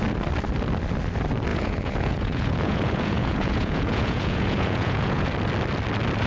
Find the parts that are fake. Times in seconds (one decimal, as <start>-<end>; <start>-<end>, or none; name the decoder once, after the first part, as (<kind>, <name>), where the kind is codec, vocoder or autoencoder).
1.5-5.3 (vocoder, Vocos)